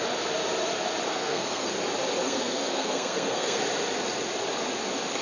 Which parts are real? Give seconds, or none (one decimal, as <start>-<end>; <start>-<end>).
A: 0.0-1.1; 1.7-2.2; 3.6-5.2